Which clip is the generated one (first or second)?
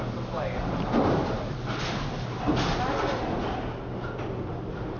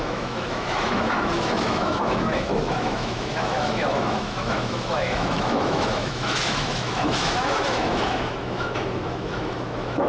second